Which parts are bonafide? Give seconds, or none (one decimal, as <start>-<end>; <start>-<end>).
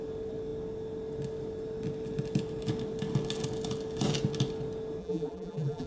0.0-5.0